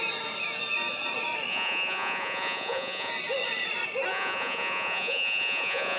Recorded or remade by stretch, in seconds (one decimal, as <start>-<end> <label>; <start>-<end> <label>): 0.0-1.5 recorded; 1.5-3.1 remade; 3.1-4.1 recorded; 4.1-6.0 remade